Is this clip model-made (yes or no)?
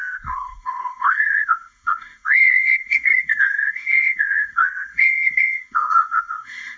yes